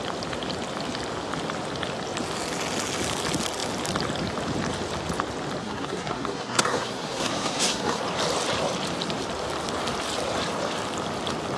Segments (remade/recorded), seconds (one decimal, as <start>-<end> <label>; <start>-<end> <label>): 0.0-5.6 recorded; 5.6-8.0 remade; 8.0-11.6 recorded